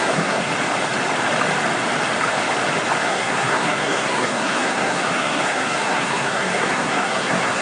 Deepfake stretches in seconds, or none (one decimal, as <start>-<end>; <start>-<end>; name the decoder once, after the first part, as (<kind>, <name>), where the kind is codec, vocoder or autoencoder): 0.0-0.5 (codec, SNAC); 3.0-7.6